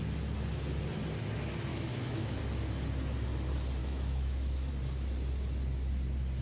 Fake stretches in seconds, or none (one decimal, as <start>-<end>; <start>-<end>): 1.7-2.4; 3.8-4.7